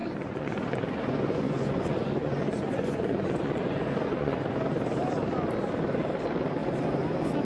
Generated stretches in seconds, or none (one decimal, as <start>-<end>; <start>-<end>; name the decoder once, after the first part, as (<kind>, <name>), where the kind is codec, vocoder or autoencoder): 0.0-4.4 (vocoder, Vocos)